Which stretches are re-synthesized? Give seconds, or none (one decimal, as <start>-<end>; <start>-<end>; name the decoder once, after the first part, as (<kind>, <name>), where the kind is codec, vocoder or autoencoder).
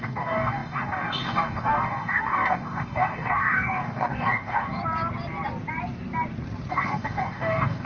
0.0-4.8 (codec, DAC); 6.7-7.9